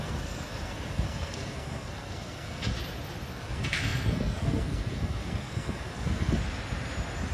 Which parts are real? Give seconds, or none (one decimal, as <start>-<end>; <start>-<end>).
2.7-3.3; 6.4-7.3